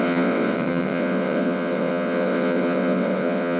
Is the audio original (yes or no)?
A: no